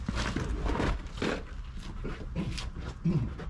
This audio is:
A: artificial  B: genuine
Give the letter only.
B